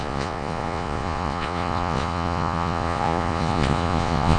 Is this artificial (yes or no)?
yes